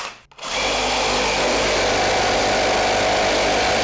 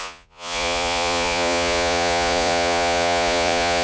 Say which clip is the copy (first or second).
second